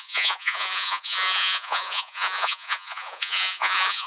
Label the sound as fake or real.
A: fake